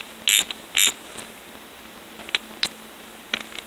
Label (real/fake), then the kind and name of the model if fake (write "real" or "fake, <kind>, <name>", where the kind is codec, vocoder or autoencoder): real